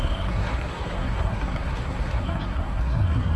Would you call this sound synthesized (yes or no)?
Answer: yes